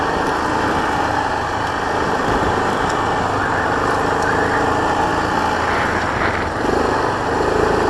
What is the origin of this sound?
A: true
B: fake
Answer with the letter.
A